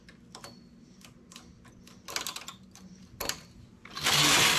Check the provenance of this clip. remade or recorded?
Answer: recorded